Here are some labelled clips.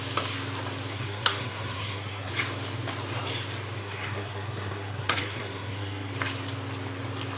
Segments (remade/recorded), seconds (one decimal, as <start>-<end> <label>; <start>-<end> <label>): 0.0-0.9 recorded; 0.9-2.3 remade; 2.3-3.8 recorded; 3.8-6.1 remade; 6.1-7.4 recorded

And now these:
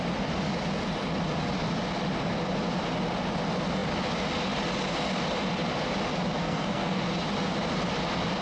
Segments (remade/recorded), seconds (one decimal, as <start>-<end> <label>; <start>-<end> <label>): 0.0-6.4 recorded; 6.4-7.0 remade; 7.0-8.4 recorded

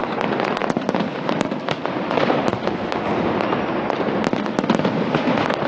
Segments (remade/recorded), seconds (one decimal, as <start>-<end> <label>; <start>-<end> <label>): 0.0-5.7 recorded